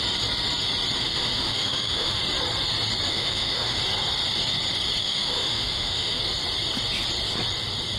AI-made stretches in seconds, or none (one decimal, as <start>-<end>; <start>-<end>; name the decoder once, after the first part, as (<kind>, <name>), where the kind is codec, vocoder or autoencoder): 1.0-2.2 (autoencoder, DAC-VAE); 3.1-3.8; 5.0-6.2

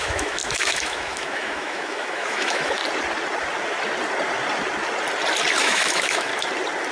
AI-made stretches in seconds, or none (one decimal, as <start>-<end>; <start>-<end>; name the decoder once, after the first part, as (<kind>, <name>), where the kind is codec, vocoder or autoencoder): 0.0-2.8 (autoencoder, DAC-VAE); 5.6-6.3

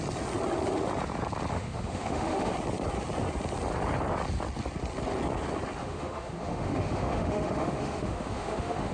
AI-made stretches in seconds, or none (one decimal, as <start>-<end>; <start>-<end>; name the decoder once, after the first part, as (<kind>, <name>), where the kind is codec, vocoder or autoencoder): 1.5-2.5 (autoencoder, DAC-VAE); 5.8-8.9

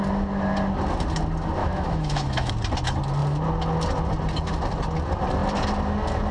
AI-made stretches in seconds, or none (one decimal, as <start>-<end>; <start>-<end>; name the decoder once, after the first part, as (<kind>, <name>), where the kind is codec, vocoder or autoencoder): 1.6-2.5 (autoencoder, DAC-VAE)

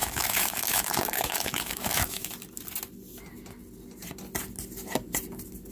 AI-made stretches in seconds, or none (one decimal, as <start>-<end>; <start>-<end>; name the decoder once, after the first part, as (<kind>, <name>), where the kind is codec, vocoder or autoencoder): 0.0-2.3 (autoencoder, DAC-VAE)

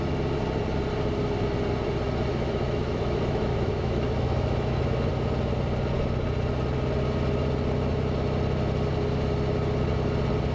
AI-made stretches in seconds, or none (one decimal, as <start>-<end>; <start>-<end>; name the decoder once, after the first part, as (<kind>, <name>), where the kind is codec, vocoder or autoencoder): 2.3-5.1 (autoencoder, DAC-VAE)

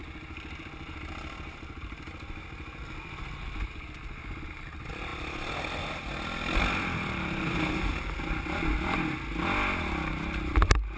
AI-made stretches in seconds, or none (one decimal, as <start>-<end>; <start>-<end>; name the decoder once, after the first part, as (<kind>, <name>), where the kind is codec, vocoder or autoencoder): none

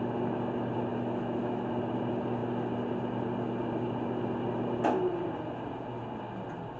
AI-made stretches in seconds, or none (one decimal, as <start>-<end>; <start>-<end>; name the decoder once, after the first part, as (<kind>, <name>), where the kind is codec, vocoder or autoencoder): 0.9-1.7 (autoencoder, DAC-VAE)